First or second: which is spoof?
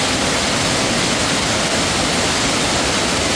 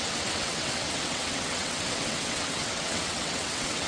second